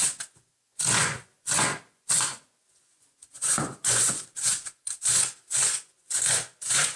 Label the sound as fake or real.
fake